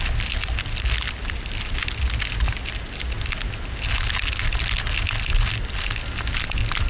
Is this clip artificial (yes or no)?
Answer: no